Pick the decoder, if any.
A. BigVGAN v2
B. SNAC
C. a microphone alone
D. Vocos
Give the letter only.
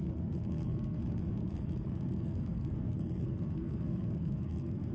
B